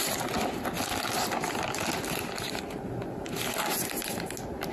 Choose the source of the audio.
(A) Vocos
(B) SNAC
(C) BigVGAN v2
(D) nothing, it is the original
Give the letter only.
D